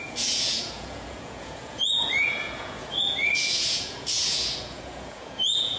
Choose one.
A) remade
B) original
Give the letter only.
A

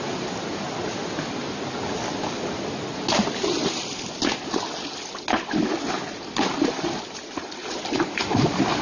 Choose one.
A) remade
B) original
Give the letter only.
B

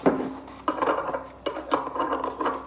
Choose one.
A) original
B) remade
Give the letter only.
A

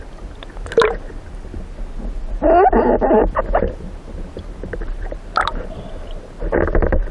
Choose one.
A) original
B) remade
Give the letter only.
A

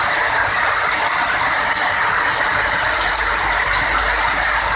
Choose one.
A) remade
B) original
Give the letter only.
B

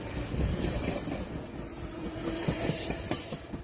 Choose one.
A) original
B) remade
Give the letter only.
A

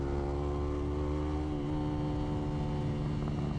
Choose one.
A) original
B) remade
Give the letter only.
A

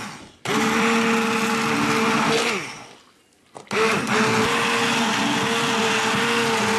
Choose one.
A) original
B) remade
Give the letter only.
A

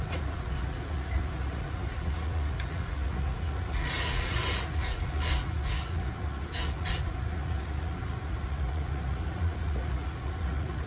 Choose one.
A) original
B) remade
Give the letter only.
B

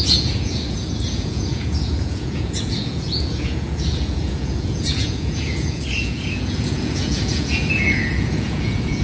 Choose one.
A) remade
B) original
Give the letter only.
A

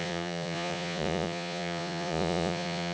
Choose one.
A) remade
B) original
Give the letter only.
A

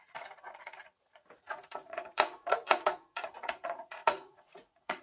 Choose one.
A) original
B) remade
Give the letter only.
B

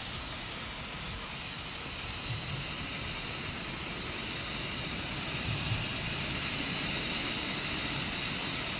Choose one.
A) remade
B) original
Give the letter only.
B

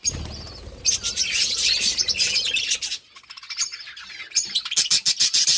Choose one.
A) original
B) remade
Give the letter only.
A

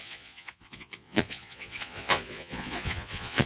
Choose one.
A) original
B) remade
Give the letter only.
B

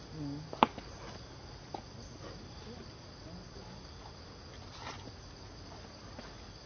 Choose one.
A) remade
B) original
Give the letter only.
B